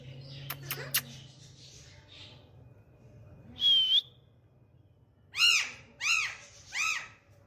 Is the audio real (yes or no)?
yes